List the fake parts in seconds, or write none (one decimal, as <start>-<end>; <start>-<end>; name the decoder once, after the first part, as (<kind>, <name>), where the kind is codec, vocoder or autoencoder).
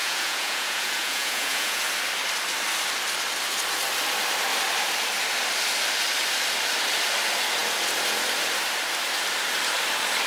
0.0-1.8 (vocoder, Vocos)